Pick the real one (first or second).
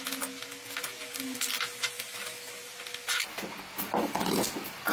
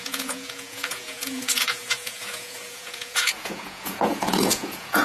first